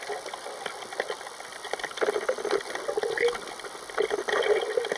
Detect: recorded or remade recorded